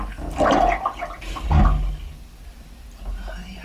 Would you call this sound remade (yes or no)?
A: no